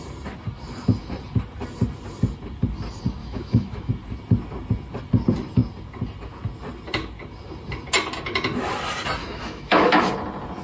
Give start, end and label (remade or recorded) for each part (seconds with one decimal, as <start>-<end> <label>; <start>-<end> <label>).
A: 0.0-3.2 recorded; 3.2-3.9 remade; 3.9-9.2 recorded; 9.2-10.1 remade; 10.1-10.6 recorded